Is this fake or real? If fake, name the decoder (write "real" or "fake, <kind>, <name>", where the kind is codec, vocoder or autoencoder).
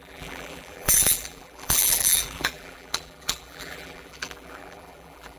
fake, vocoder, BigVGAN v2